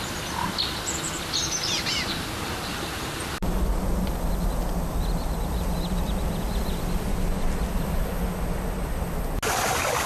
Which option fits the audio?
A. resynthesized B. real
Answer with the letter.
B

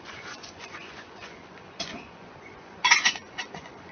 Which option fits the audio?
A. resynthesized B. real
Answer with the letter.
A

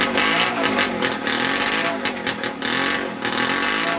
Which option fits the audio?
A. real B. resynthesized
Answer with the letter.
A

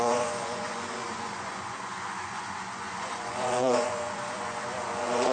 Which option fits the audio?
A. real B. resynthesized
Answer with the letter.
B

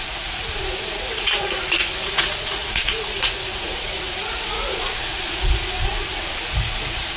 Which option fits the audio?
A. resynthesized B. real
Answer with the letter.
A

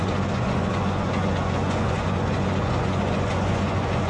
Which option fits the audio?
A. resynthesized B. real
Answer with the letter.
A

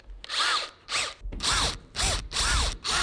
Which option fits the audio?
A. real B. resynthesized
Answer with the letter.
A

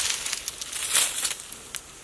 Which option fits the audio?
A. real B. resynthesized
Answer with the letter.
A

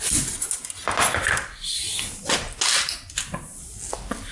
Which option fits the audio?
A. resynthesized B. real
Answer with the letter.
B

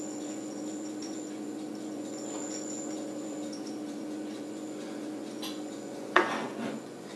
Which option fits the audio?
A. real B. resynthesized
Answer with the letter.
B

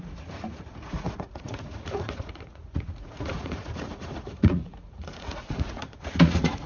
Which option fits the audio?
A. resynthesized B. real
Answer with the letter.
A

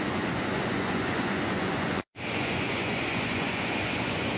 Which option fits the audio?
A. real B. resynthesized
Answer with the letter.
B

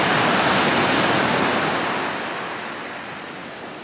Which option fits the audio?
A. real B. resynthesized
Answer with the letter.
A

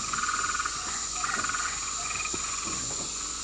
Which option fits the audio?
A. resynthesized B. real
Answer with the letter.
A